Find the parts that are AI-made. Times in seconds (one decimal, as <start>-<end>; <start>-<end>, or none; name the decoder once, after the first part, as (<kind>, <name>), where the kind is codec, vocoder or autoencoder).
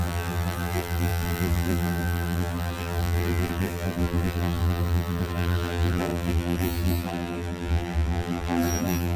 0.0-9.2 (vocoder, BigVGAN v2)